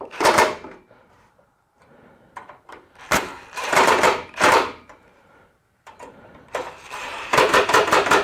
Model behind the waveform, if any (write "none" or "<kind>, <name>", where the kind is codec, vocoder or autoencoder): vocoder, BigVGAN v2